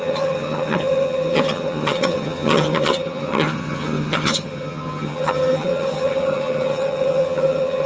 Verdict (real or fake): fake